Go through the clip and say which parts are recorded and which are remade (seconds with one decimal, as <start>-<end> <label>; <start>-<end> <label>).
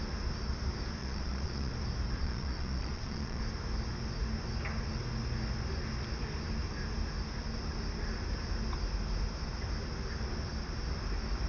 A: 0.0-1.0 recorded; 1.0-1.7 remade; 1.7-2.2 recorded; 2.2-3.4 remade; 3.4-11.5 recorded